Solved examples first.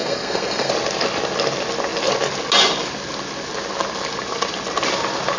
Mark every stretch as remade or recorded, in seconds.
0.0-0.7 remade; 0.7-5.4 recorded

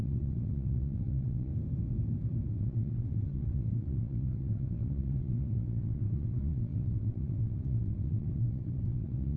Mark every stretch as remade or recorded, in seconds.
0.0-1.5 remade; 1.5-2.5 recorded; 2.5-9.4 remade

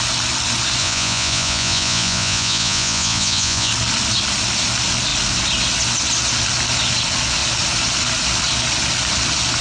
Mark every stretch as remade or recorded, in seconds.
0.0-0.8 recorded; 0.8-3.7 remade; 3.7-9.6 recorded

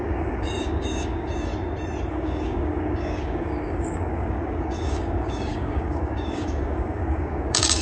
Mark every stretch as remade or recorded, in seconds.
0.0-1.5 remade; 1.5-2.1 recorded; 2.1-7.8 remade

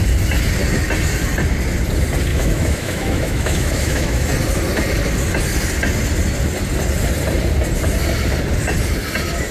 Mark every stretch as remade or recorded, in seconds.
0.0-2.3 recorded; 2.3-4.3 remade; 4.3-9.5 recorded

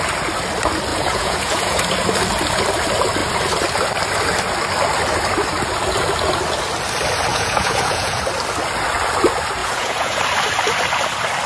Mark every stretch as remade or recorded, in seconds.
0.0-0.9 recorded; 0.9-1.8 remade; 1.8-7.3 recorded; 7.3-8.2 remade; 8.2-9.6 recorded; 9.6-10.2 remade; 10.2-11.5 recorded

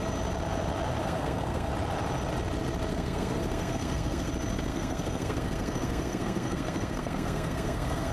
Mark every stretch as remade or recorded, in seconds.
0.0-1.0 recorded; 1.0-1.7 remade; 1.7-2.9 recorded; 2.9-4.3 remade; 4.3-4.7 recorded; 4.7-8.1 remade